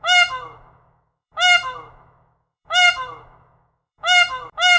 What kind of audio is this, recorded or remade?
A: remade